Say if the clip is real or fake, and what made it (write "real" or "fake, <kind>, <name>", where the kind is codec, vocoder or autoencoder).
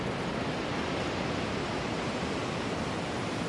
real